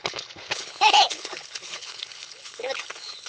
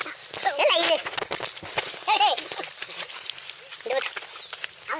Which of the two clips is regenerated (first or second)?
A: first